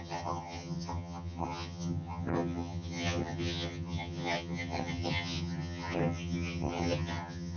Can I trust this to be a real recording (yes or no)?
no